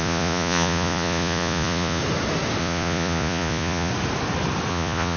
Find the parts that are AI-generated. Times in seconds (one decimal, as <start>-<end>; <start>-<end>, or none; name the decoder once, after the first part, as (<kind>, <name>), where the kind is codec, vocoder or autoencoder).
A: 0.0-2.0 (vocoder, Vocos); 2.6-3.9; 4.7-5.2